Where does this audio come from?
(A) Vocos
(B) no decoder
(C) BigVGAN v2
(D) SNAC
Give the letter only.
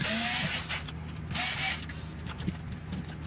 B